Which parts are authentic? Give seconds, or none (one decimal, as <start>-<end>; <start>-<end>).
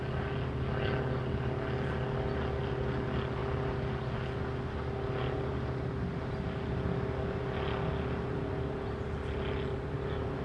0.0-10.4